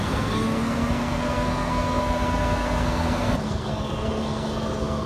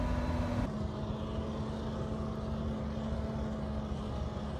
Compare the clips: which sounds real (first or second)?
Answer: second